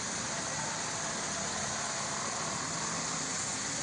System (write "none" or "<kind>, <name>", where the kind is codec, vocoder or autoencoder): none